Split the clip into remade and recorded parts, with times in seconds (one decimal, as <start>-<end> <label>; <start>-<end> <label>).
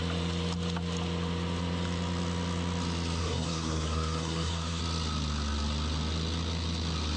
0.0-3.2 recorded; 3.2-4.8 remade; 4.8-7.2 recorded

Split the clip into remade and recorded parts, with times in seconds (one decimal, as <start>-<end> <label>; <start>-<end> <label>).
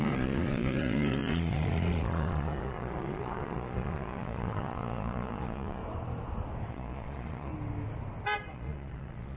0.0-5.8 remade; 5.8-6.7 recorded; 6.7-7.5 remade; 7.5-8.5 recorded; 8.5-9.4 remade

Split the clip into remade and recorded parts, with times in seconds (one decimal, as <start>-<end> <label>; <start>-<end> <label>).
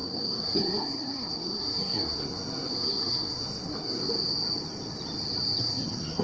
0.0-4.0 remade; 4.0-5.6 recorded; 5.6-6.2 remade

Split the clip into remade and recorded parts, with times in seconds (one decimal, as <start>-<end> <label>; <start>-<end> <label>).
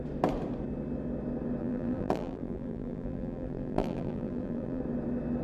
0.0-1.6 recorded; 1.6-4.8 remade; 4.8-5.4 recorded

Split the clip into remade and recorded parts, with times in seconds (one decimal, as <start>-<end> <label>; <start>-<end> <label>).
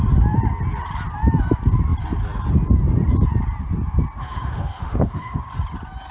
0.0-4.2 recorded; 4.2-5.4 remade; 5.4-6.1 recorded